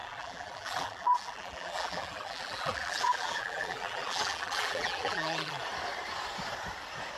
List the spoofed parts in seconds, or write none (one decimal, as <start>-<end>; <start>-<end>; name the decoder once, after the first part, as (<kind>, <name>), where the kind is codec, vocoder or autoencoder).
0.0-5.6 (vocoder, BigVGAN v2)